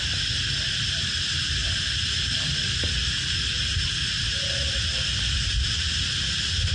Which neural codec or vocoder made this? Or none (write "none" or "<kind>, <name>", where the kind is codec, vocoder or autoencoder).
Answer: none